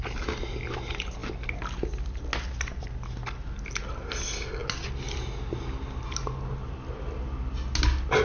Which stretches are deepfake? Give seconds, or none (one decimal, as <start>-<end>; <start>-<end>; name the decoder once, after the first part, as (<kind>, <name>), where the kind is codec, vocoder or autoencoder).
none